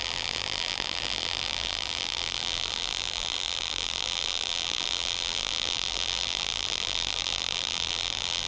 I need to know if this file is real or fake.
fake